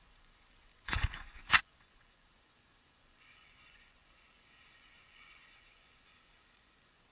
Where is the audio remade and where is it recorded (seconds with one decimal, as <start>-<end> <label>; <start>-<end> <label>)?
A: 0.0-7.1 remade